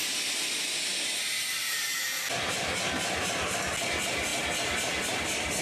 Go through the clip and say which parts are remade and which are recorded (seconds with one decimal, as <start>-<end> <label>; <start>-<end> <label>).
0.0-5.6 recorded

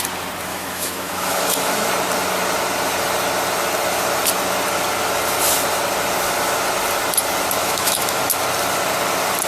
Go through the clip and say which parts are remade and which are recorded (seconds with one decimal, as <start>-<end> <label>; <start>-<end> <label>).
0.0-0.5 recorded; 0.5-1.9 remade; 1.9-7.6 recorded; 7.6-8.2 remade; 8.2-9.5 recorded

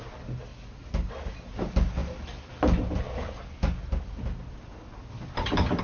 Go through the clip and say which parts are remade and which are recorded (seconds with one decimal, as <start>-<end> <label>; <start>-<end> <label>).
0.0-5.8 recorded

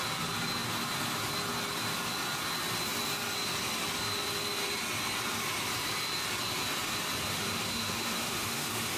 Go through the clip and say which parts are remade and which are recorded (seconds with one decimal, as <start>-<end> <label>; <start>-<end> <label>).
0.0-7.3 recorded; 7.3-9.0 remade